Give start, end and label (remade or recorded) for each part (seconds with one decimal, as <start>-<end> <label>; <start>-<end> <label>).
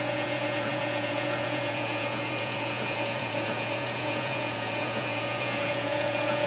0.0-6.5 remade